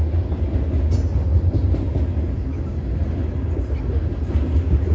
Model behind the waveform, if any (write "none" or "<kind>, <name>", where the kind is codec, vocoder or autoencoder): none